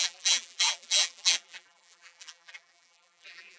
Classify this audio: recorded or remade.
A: remade